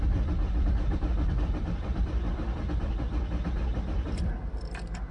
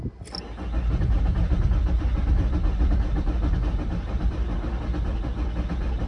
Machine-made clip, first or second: first